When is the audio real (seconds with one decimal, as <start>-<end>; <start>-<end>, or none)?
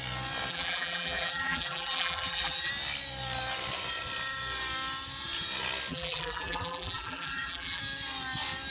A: 0.0-0.5; 2.7-5.9; 7.8-8.7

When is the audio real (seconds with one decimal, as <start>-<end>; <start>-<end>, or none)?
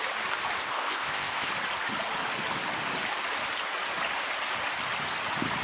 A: 0.0-0.6; 1.5-5.6